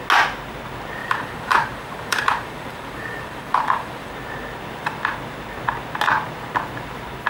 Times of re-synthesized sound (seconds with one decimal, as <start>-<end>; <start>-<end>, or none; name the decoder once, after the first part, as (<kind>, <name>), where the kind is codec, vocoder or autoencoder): 1.0-4.1 (vocoder, BigVGAN v2)